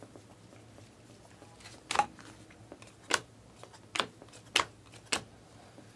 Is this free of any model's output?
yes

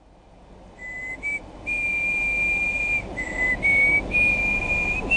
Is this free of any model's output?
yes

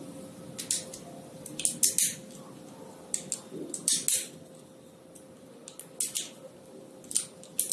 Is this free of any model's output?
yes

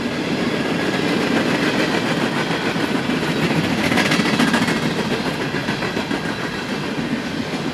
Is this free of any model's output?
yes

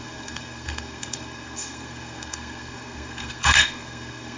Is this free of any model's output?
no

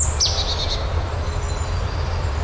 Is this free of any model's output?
yes